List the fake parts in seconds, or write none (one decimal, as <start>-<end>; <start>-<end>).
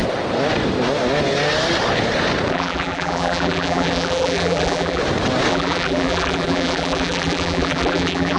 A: 2.5-5.0; 5.5-8.4